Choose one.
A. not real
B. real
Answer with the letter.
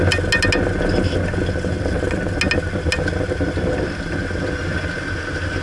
B